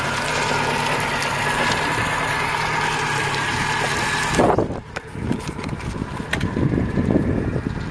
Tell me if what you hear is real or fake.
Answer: real